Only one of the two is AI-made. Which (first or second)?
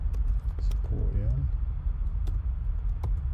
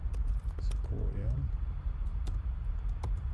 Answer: second